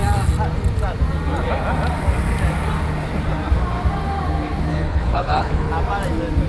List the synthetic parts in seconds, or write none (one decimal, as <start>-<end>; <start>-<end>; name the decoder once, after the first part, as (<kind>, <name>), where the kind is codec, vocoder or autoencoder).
4.7-5.7 (codec, HILCodec)